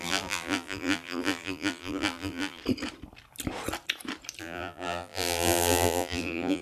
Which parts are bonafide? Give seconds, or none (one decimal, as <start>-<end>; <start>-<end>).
2.6-4.4